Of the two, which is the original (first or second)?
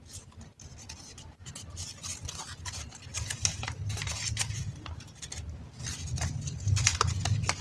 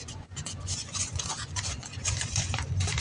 first